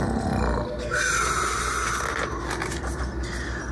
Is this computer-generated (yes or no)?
no